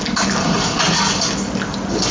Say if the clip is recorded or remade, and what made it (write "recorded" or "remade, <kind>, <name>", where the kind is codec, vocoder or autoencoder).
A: recorded